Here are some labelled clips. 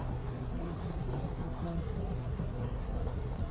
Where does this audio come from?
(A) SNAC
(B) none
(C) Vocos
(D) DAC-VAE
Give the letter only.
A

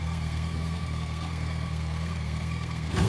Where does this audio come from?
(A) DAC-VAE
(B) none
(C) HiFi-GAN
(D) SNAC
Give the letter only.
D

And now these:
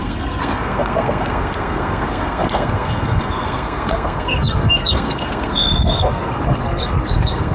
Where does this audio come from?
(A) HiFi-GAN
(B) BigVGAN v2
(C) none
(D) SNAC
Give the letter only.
D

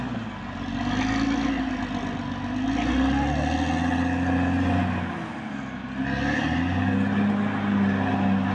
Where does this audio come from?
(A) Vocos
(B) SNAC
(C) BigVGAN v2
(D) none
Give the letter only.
D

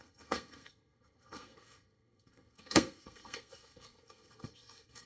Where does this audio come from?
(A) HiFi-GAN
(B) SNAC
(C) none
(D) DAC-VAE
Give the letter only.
B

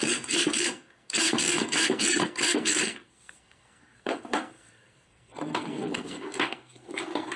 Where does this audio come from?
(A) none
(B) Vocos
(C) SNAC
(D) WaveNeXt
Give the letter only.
C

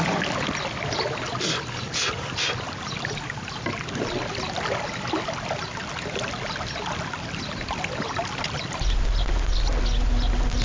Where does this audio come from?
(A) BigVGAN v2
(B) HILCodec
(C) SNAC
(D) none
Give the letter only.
D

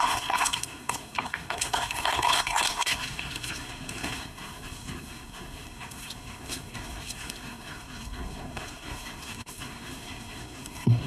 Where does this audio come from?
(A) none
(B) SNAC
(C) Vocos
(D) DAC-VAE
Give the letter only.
B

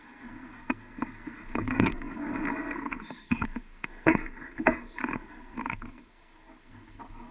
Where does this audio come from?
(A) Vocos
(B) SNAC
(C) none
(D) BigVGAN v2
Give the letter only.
B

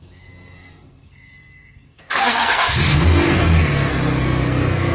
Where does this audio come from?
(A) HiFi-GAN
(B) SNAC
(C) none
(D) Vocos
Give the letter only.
B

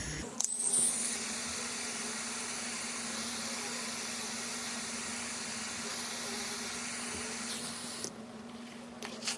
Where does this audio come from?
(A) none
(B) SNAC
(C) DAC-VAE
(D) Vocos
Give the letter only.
A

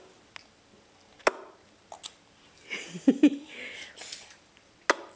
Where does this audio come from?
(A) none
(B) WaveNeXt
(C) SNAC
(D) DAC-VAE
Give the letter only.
A